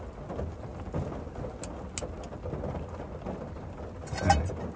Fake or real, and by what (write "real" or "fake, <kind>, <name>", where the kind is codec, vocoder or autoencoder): real